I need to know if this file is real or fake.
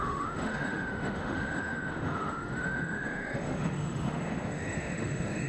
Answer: fake